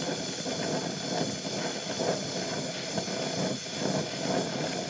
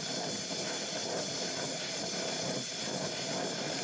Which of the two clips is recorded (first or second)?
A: first